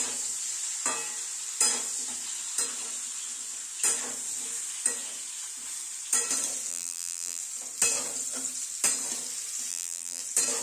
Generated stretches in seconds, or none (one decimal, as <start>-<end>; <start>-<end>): 6.7-7.4; 9.7-10.2